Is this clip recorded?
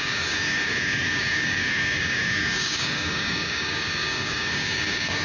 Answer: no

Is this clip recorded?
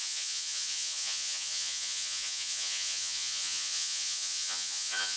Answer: no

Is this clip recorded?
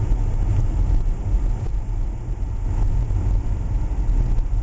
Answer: yes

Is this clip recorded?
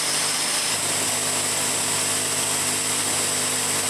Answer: yes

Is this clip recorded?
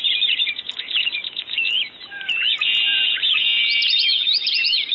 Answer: no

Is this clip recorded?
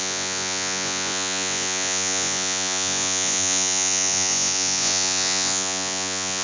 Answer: no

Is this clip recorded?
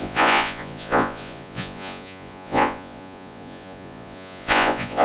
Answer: no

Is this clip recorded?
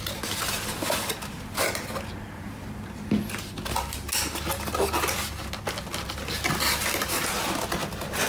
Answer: yes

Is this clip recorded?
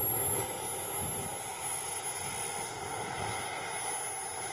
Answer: yes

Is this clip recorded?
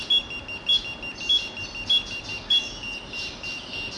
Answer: yes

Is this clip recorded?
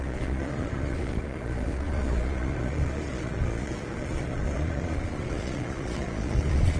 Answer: no